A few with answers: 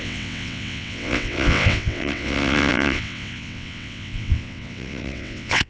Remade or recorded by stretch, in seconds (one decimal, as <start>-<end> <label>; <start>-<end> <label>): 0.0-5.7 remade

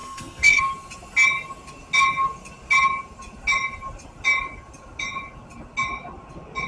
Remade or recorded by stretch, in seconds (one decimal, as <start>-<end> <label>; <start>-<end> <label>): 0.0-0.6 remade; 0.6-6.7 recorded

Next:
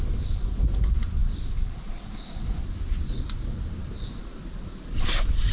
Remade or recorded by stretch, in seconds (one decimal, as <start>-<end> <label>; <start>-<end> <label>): 0.0-5.5 recorded

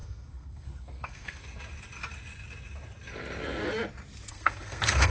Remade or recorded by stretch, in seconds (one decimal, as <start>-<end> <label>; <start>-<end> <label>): 0.0-1.4 remade; 1.4-4.3 recorded; 4.3-5.1 remade

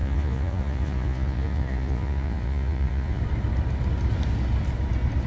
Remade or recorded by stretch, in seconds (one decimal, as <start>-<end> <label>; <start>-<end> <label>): 0.0-3.2 remade; 3.2-5.3 recorded

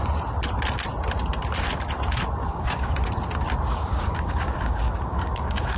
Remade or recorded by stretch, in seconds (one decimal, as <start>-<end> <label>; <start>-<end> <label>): 0.0-2.4 recorded; 2.4-2.9 remade; 2.9-3.7 recorded; 3.7-5.8 remade

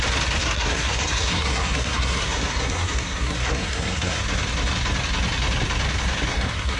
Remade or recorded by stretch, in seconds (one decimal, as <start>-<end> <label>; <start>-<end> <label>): 0.0-0.4 recorded; 0.4-4.2 remade; 4.2-6.3 recorded; 6.3-6.8 remade